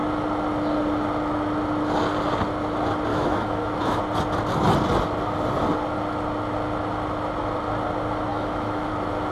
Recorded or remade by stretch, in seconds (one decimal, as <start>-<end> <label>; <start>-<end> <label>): 0.0-3.1 recorded; 3.1-4.0 remade; 4.0-8.3 recorded; 8.3-8.9 remade; 8.9-9.3 recorded